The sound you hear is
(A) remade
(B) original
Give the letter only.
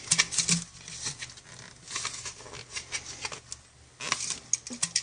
B